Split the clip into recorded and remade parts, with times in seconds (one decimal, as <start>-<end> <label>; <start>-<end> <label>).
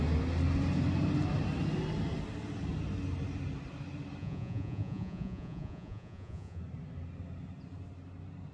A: 0.0-4.2 recorded; 4.2-6.6 remade; 6.6-8.5 recorded